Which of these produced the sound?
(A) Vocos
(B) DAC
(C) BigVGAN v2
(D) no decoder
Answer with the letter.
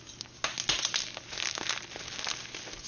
D